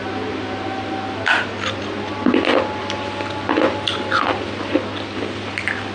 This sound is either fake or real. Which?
real